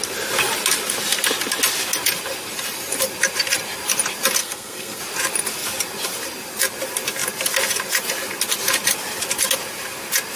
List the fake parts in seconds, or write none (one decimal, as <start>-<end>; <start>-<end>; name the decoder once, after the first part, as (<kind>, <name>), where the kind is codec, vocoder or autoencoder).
4.4-5.0 (codec, SNAC)